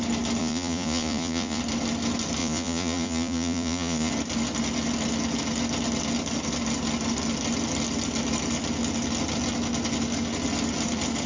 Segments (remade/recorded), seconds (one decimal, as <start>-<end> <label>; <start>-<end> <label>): 0.0-0.4 recorded; 0.4-1.6 remade; 1.6-2.4 recorded; 2.4-4.1 remade; 4.1-11.3 recorded